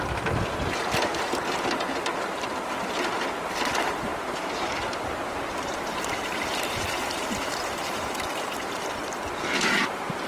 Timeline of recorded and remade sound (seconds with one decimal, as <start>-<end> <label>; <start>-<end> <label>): 0.0-4.1 recorded; 4.1-8.3 remade; 8.3-10.3 recorded